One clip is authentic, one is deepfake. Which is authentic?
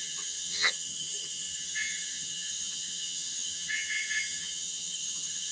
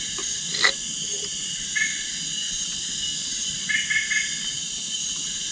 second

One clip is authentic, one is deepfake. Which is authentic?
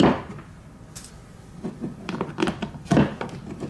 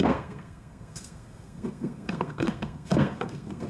first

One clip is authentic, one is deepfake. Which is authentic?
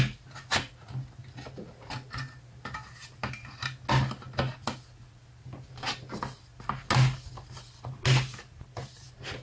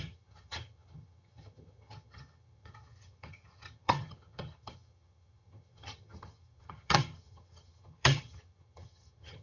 first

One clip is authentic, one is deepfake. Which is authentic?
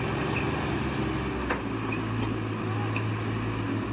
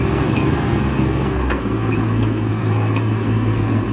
first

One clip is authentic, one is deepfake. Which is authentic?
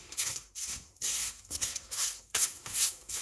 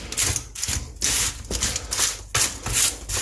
second